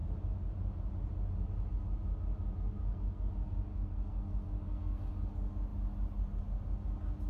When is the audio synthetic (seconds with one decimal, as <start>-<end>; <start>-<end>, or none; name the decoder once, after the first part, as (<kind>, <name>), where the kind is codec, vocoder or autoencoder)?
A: 2.8-3.3 (codec, SNAC); 3.7-5.1